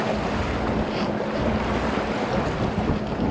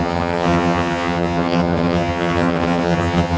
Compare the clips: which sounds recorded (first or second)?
first